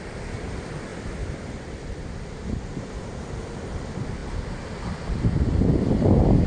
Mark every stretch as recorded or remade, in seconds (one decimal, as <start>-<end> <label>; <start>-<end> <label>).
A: 0.0-6.5 recorded